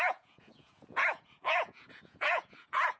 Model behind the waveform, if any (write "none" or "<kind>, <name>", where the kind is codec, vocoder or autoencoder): vocoder, Vocos